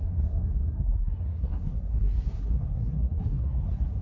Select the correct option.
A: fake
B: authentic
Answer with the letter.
A